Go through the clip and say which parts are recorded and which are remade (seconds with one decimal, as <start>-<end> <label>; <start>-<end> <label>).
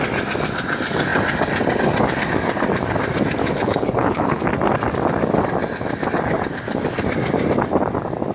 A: 0.0-3.4 recorded; 3.4-4.4 remade; 4.4-8.3 recorded